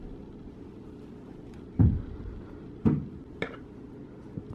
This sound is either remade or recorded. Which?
recorded